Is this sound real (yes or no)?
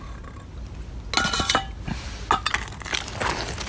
yes